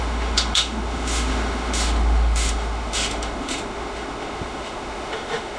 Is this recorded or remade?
remade